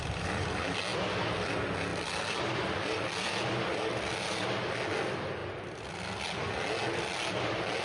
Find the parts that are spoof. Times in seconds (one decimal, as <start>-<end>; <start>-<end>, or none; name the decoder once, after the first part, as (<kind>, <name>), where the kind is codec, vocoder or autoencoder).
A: 1.9-4.5 (vocoder, BigVGAN v2)